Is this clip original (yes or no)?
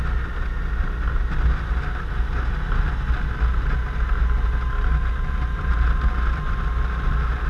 yes